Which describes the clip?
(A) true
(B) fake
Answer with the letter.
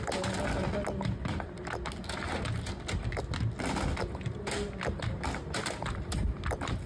A